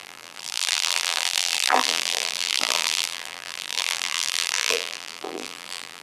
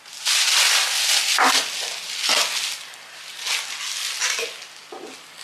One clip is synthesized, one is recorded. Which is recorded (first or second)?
second